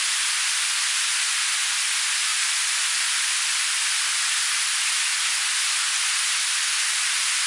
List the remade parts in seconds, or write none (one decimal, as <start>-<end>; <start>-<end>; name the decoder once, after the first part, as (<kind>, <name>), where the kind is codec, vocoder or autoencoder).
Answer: none

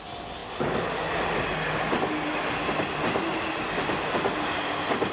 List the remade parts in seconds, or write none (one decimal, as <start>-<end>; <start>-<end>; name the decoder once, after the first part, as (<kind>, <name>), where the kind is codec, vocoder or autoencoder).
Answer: none

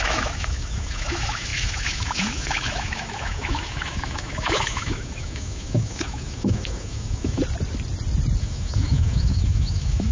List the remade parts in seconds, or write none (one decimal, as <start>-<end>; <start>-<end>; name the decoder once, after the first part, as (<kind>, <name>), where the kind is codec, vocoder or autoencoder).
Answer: 0.0-7.4 (autoencoder, DAC-VAE); 8.4-10.1

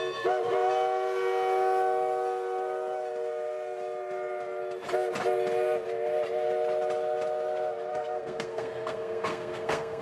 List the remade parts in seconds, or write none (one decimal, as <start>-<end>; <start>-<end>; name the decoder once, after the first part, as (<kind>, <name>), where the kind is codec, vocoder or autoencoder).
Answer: 7.9-10.0 (codec, SNAC)